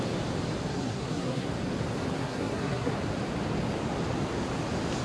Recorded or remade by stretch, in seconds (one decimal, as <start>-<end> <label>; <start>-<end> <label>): 0.0-0.7 recorded; 0.7-1.5 remade; 1.5-2.1 recorded; 2.1-2.9 remade; 2.9-5.0 recorded